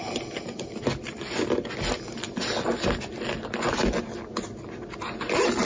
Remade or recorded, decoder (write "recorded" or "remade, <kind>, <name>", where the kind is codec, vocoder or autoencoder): recorded